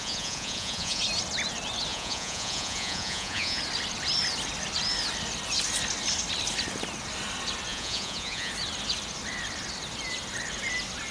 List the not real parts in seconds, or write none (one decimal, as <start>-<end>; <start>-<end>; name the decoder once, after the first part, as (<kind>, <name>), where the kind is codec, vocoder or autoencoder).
0.0-1.0 (vocoder, Vocos); 1.9-3.6; 7.7-8.5